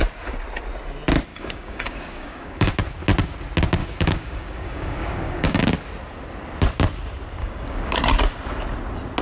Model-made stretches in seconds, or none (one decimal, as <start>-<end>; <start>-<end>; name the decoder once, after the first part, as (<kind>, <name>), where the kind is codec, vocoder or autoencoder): 1.3-2.7 (codec, DAC); 3.8-5.6; 7.4-8.2